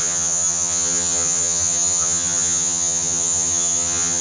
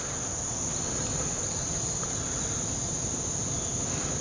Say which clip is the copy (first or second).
first